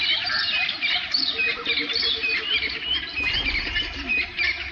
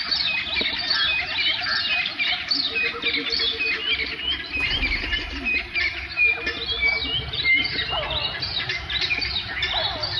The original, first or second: second